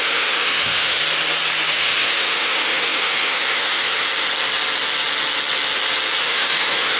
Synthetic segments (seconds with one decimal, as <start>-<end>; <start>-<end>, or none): 0.0-1.0; 1.7-4.1; 6.2-7.0